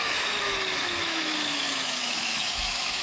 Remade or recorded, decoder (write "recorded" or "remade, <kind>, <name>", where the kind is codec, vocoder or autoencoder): remade, autoencoder, DAC-VAE